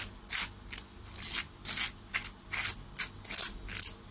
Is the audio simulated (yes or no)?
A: no